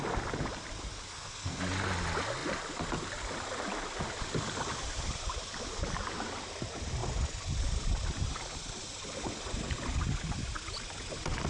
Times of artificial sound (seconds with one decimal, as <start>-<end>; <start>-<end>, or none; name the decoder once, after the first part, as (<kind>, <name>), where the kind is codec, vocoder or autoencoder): 1.1-1.6 (codec, SNAC)